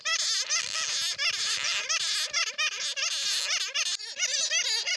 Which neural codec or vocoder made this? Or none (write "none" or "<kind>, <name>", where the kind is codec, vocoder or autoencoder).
none